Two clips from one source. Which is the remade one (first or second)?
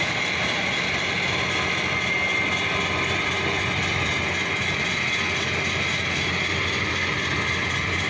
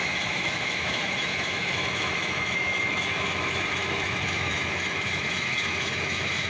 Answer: second